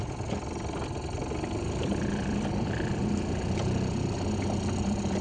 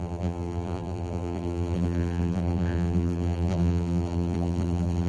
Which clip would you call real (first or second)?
first